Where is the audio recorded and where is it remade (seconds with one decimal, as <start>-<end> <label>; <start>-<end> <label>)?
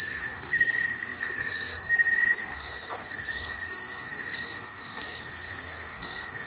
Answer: 0.0-6.5 remade